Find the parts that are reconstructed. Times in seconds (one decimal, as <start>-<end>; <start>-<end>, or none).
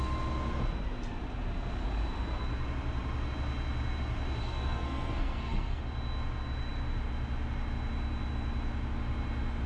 4.4-5.8